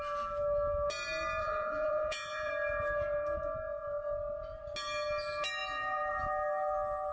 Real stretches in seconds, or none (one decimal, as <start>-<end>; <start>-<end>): 0.0-1.4; 2.5-7.1